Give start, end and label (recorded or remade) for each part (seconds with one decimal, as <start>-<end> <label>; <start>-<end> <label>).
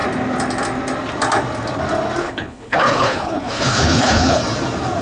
0.0-2.2 recorded; 2.2-4.4 remade; 4.4-5.0 recorded